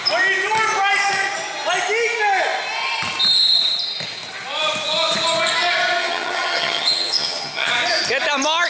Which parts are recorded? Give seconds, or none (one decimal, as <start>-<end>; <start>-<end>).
0.0-6.0; 7.7-8.7